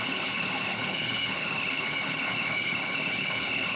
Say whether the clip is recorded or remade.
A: remade